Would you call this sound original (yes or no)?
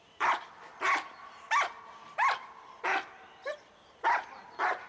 yes